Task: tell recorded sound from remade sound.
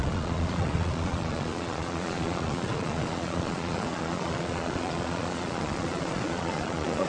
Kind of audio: remade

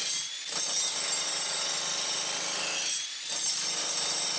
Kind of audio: recorded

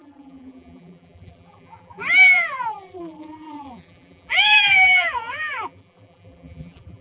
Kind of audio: remade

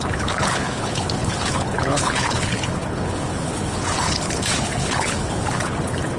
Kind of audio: remade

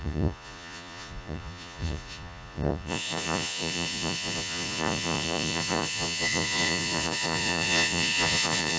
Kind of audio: remade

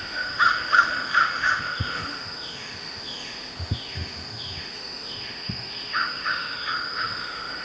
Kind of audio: remade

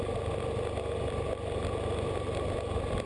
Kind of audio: recorded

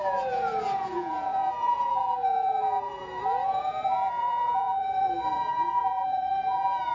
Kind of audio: remade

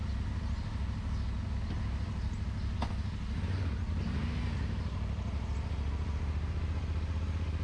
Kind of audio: recorded